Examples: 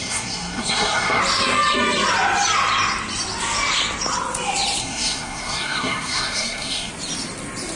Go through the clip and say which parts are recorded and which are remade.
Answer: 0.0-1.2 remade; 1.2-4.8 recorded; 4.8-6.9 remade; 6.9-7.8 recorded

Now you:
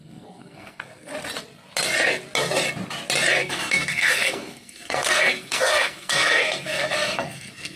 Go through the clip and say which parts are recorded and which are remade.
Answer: 0.0-1.1 remade; 1.1-3.3 recorded; 3.3-7.8 remade